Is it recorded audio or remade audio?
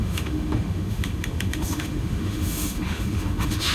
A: remade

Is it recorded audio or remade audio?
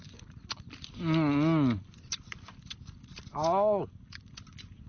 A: recorded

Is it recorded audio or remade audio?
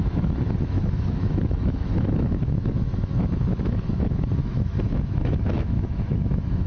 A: remade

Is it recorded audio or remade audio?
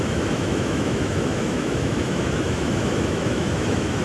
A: remade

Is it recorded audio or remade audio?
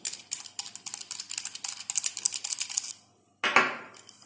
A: recorded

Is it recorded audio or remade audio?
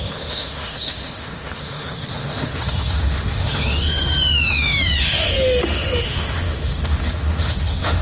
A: remade